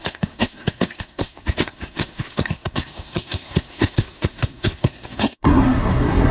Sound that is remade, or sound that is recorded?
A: remade